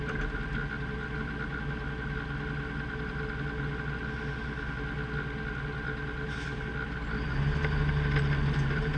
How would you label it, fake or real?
real